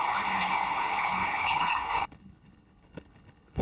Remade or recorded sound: remade